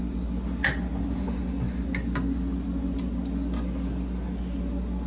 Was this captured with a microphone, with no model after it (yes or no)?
yes